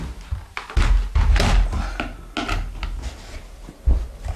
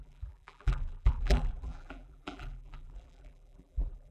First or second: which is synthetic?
second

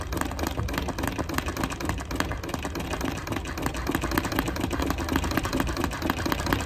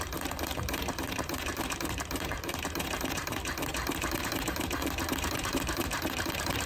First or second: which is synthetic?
second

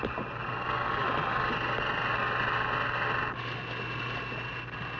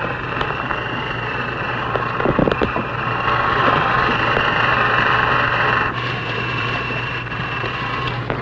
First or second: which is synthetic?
second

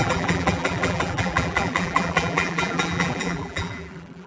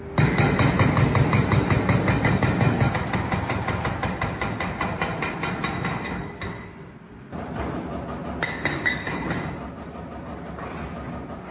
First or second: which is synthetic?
first